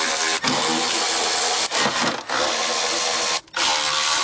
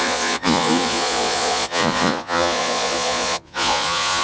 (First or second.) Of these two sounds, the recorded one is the first